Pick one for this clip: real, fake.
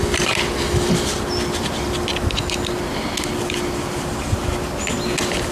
real